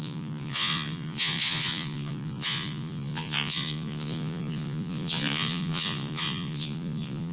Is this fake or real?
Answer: fake